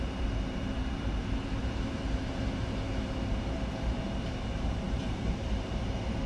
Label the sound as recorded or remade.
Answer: remade